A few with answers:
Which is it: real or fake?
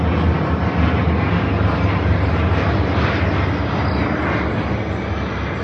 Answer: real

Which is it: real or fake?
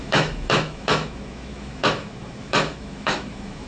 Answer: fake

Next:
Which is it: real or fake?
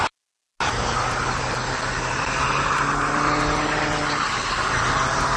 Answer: real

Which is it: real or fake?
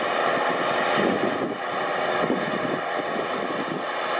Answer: real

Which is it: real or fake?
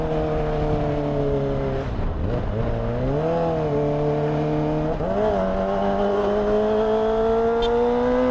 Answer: real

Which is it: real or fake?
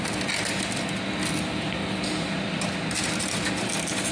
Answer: real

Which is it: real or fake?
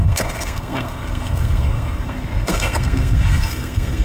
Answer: fake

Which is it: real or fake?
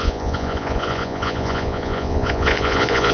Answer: fake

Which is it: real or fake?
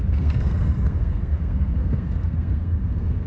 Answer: fake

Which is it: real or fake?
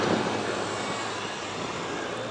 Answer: real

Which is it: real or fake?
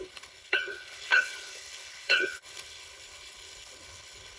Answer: fake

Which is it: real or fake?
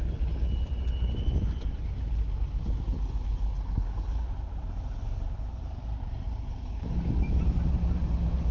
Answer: real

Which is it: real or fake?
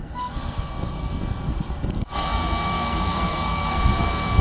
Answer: fake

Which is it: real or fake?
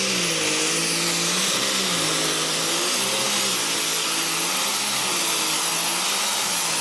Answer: real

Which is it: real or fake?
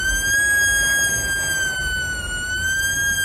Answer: real